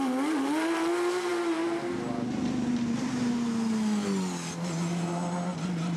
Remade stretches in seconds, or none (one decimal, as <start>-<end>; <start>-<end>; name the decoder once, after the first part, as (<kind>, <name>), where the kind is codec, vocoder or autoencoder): none

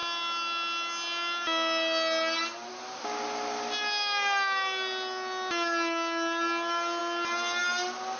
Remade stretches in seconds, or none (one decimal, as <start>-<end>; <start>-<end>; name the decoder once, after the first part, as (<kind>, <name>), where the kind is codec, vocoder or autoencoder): none

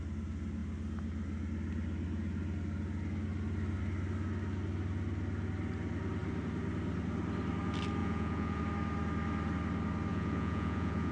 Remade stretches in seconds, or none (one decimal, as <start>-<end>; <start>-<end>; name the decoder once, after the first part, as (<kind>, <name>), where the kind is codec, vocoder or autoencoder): 8.0-8.6 (vocoder, Vocos); 10.1-11.1

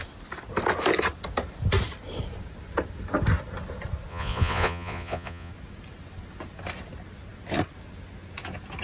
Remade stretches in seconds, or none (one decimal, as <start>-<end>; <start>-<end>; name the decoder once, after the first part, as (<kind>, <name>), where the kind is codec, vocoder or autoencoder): 4.1-5.5 (vocoder, Vocos)

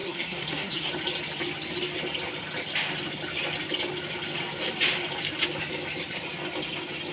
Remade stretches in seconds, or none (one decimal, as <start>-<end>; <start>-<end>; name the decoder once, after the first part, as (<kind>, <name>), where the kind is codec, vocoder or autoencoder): 0.0-0.9 (codec, SNAC)

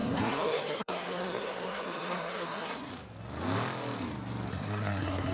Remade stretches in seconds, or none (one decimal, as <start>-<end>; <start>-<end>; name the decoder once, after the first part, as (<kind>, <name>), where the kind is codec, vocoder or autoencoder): 0.0-2.9 (codec, SNAC); 4.5-5.3